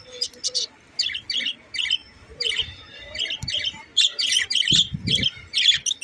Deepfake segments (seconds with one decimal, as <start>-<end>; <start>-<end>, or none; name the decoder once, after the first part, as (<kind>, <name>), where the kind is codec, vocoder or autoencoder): 2.0-5.6 (vocoder, BigVGAN v2)